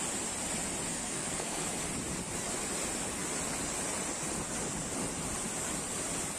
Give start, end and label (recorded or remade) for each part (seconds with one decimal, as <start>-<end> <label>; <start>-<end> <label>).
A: 0.0-0.9 recorded; 0.9-1.7 remade; 1.7-6.4 recorded